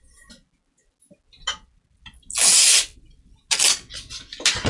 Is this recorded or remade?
recorded